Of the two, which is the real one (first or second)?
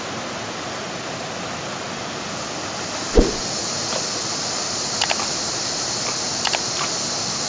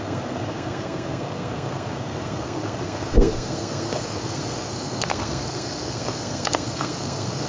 first